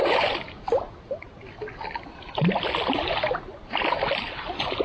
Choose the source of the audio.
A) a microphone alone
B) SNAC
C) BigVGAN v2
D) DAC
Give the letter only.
A